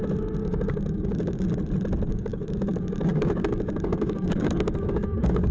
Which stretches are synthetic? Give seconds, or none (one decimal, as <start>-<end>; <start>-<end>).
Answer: 0.4-1.4; 2.1-5.5